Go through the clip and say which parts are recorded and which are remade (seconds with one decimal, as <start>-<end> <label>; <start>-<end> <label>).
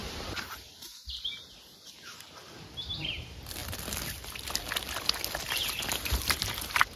0.0-3.6 remade; 3.6-5.5 recorded; 5.5-7.0 remade